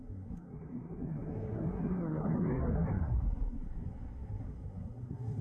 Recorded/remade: remade